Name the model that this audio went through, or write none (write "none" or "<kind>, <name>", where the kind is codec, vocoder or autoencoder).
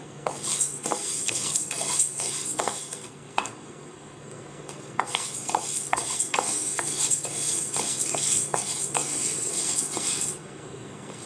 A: codec, SNAC